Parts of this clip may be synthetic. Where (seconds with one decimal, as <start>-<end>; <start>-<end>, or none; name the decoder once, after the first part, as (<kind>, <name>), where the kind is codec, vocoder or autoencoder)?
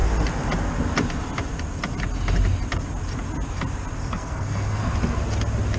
4.0-4.8 (codec, SNAC)